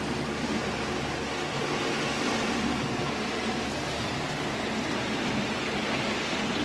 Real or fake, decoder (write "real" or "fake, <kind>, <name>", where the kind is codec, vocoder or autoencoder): real